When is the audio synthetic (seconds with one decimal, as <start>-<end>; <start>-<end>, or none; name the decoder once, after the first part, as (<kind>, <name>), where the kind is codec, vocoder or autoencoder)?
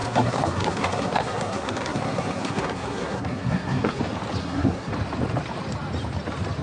0.0-4.0 (codec, SNAC); 4.4-4.9